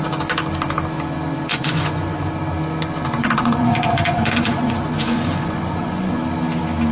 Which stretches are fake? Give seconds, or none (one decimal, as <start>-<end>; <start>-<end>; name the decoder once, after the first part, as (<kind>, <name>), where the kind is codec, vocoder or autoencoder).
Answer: 1.5-2.3 (vocoder, Vocos); 3.2-6.2